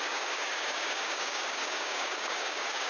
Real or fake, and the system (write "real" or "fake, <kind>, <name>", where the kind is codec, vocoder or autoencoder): fake, codec, DAC